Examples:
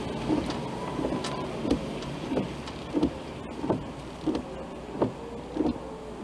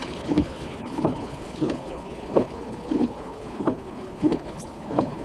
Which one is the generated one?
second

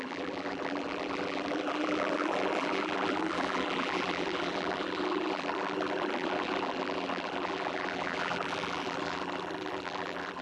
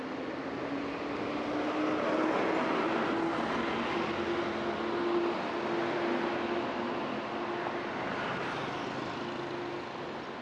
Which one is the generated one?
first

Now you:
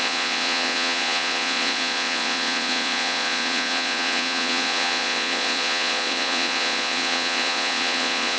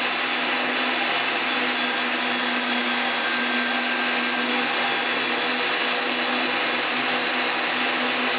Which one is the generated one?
first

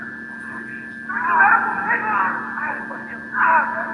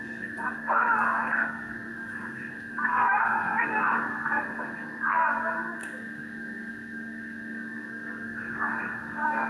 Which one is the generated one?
second